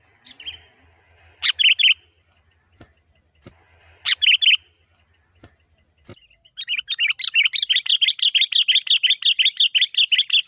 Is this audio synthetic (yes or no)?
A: no